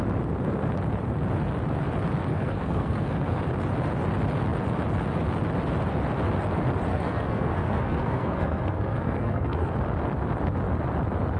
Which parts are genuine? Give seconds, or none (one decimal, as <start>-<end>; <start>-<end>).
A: 0.0-2.3; 3.4-6.9; 9.7-11.4